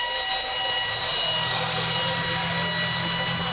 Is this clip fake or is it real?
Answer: real